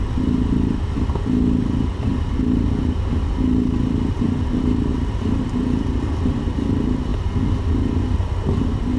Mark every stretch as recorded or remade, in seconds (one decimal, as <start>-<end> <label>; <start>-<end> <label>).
0.0-4.9 recorded; 4.9-5.5 remade; 5.5-9.0 recorded